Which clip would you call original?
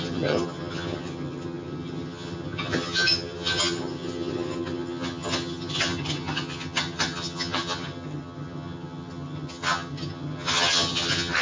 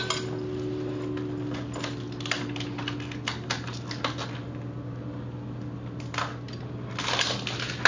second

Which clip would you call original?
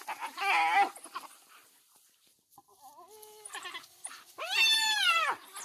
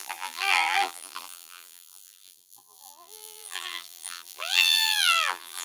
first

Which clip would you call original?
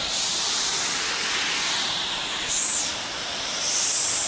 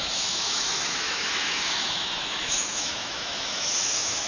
first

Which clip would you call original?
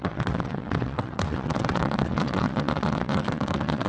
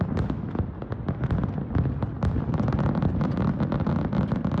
second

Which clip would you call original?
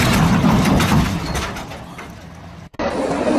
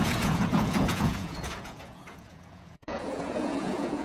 first